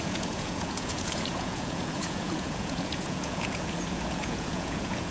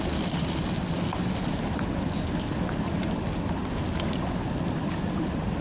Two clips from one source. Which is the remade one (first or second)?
first